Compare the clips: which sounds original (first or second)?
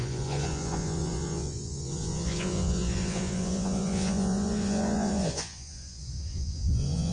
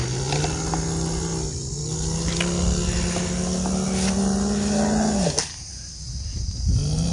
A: second